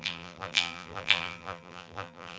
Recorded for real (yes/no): no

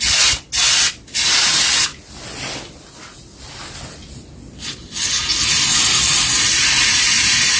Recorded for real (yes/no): yes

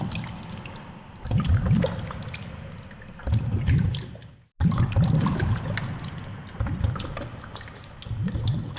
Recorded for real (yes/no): yes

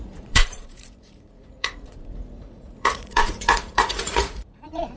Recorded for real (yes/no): no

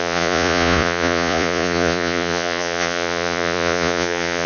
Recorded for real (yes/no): no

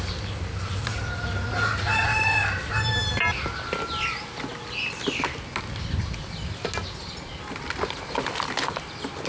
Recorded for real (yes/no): yes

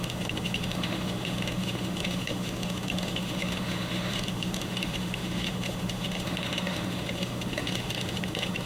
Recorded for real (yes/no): no